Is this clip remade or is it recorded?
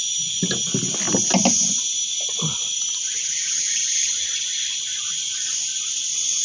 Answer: recorded